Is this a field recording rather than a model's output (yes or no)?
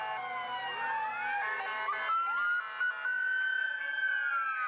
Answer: yes